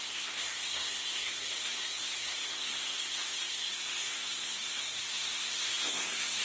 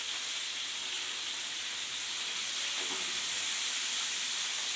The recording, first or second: second